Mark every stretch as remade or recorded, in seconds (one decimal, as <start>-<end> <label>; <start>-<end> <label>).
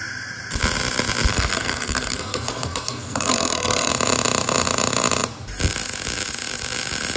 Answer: 0.0-1.3 recorded; 1.3-3.9 remade; 3.9-7.2 recorded